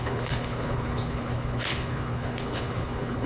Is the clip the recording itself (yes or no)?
no